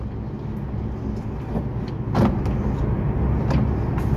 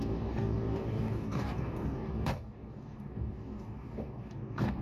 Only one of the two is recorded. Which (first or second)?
first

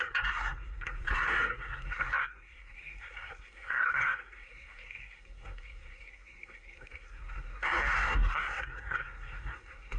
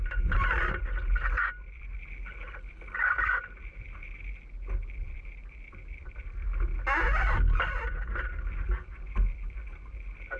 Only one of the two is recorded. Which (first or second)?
second